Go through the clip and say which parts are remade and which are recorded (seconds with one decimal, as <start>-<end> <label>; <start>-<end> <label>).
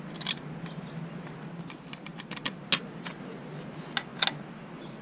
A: 0.0-5.0 recorded